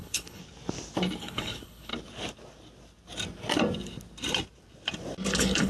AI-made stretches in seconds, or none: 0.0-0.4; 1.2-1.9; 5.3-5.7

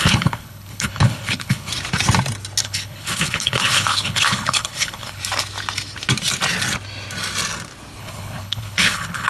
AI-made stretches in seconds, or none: 0.0-1.7; 2.6-5.2; 8.0-9.3

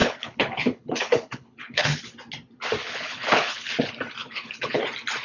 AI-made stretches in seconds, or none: 0.0-2.0; 2.8-3.7; 4.2-4.8

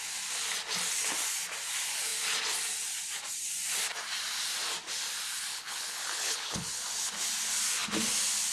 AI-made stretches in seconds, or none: 5.5-6.8

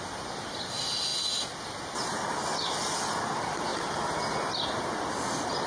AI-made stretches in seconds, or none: none

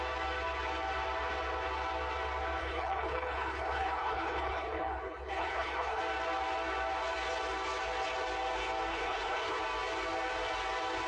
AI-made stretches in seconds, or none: 2.6-6.0; 8.9-9.6

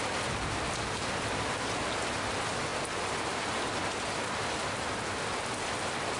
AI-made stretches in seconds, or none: none